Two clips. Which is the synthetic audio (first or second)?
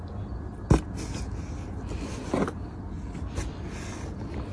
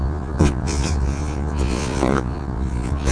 second